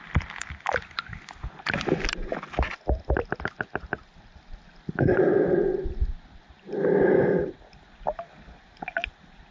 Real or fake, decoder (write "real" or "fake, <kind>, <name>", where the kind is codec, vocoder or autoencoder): real